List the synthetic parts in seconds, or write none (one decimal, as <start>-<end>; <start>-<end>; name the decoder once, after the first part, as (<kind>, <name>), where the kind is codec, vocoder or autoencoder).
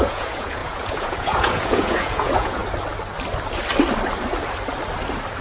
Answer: 0.0-2.6 (vocoder, Vocos)